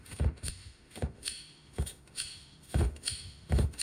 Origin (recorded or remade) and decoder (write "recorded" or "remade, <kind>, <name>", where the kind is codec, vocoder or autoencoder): remade, autoencoder, DAC-VAE